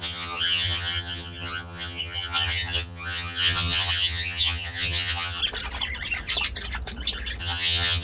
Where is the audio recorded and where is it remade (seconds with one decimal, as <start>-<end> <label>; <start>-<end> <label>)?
0.0-5.4 remade; 5.4-7.4 recorded; 7.4-8.0 remade